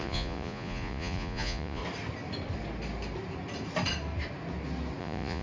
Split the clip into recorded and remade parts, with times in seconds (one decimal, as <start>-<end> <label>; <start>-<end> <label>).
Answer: 0.0-1.8 remade; 1.8-5.0 recorded; 5.0-5.4 remade